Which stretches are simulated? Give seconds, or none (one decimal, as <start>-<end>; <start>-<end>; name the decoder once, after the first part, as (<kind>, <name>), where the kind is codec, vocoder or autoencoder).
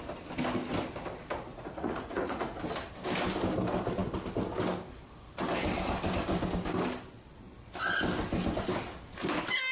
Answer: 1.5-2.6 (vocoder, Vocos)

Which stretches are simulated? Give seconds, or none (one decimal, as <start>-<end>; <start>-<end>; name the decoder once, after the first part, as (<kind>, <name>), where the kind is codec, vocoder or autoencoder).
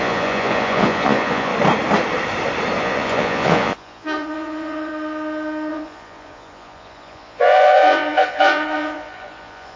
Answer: 0.0-1.5 (vocoder, Vocos); 2.8-4.9; 5.7-9.8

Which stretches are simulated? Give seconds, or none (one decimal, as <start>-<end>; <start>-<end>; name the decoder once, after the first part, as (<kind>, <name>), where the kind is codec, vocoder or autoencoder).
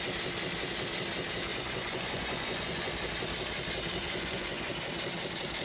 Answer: 1.5-2.9 (vocoder, Vocos); 4.0-4.7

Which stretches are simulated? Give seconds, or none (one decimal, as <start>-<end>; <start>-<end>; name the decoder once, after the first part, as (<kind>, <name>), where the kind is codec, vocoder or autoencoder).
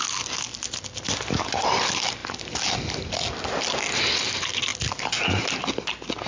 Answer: none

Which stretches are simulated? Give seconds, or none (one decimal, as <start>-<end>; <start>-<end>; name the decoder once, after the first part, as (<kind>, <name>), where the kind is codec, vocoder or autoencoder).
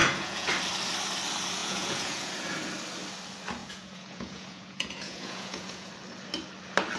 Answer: 0.0-0.5 (vocoder, Vocos); 1.6-2.3; 3.6-5.9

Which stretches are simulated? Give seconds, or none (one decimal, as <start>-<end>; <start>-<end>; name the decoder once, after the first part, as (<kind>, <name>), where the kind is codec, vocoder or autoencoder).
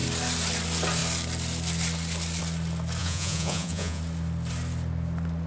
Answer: 3.0-4.0 (vocoder, Vocos)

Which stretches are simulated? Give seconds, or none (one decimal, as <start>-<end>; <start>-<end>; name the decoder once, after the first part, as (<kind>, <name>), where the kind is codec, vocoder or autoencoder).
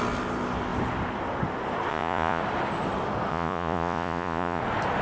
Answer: 1.9-2.4 (vocoder, Vocos); 3.3-4.6